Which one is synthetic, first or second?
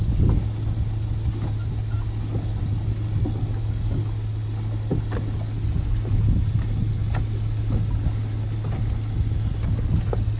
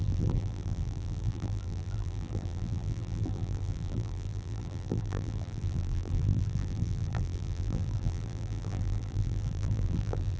second